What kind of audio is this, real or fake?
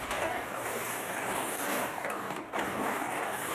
fake